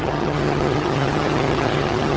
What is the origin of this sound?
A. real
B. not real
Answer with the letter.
B